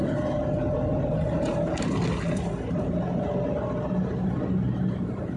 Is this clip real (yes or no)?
yes